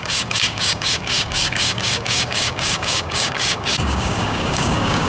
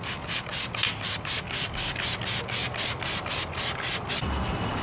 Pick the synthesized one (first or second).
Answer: first